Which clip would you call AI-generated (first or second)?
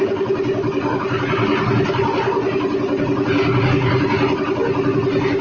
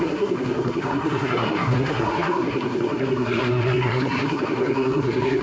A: second